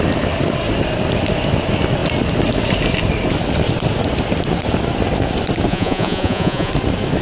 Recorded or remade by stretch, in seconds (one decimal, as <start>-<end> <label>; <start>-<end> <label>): 0.0-5.7 recorded; 5.7-6.7 remade; 6.7-7.2 recorded